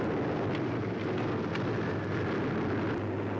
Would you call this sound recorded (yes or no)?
yes